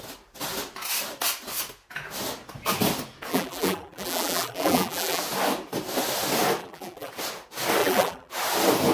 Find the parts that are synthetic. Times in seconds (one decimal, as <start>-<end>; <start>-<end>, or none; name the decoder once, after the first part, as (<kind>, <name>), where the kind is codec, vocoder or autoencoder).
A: 3.3-5.2 (vocoder, BigVGAN v2); 6.6-7.1; 7.8-8.3